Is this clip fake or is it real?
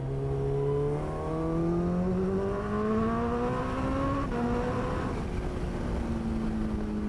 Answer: real